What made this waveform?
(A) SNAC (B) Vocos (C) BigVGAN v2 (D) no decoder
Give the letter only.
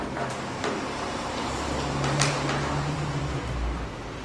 C